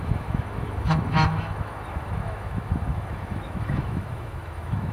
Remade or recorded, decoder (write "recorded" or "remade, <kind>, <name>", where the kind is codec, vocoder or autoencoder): remade, autoencoder, DAC-VAE